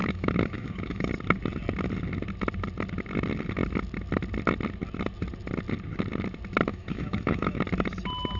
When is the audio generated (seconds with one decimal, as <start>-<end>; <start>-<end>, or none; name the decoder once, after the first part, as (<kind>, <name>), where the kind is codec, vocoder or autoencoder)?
0.0-1.1 (autoencoder, DAC-VAE); 6.7-7.6